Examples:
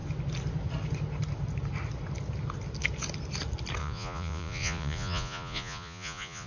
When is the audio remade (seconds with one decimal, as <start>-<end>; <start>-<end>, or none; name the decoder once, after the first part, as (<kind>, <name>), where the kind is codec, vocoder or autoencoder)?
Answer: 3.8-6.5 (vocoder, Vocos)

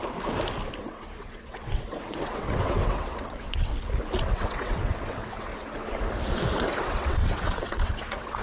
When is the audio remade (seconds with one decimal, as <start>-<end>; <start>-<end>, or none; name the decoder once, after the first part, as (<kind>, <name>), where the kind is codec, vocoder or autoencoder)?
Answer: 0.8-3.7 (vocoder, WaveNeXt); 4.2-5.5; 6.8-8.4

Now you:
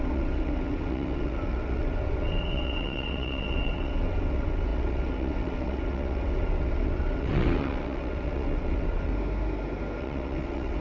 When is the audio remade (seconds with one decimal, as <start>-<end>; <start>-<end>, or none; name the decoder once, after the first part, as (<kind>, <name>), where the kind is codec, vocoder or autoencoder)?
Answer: 0.0-9.1 (vocoder, WaveNeXt); 10.0-10.8

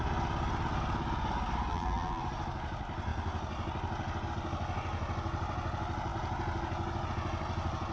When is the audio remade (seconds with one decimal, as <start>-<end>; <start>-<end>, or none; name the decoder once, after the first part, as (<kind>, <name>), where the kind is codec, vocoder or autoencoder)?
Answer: 1.7-2.2 (vocoder, BigVGAN v2)

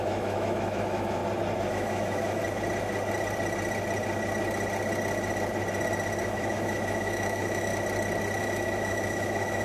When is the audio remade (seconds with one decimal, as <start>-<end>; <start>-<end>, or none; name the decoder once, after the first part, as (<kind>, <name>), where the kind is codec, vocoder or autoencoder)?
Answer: 0.0-1.2 (autoencoder, DAC-VAE); 1.7-2.4; 6.2-7.7; 8.4-9.6

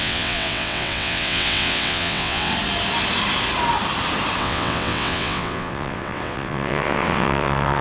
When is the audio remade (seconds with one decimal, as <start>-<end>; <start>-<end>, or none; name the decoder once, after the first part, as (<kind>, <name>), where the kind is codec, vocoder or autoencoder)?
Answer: 0.0-2.5 (vocoder, WaveNeXt); 4.4-7.8

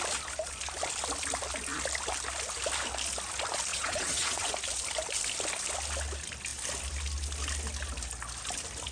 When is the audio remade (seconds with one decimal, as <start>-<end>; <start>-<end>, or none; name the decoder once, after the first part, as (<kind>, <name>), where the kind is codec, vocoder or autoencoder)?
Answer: 3.7-4.5 (vocoder, WaveNeXt)